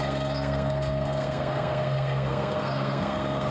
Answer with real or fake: fake